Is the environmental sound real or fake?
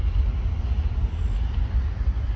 real